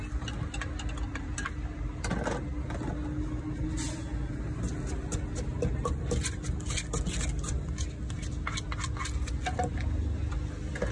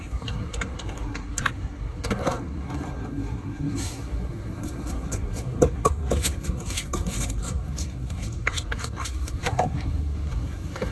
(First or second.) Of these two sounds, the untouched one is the first